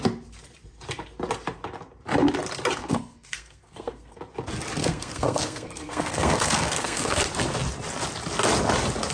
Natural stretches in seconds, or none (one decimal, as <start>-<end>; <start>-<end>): 0.0-2.8; 4.2-4.8; 7.2-9.1